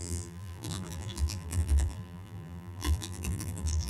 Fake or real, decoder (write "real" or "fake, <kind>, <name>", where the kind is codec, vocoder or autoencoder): fake, vocoder, BigVGAN v2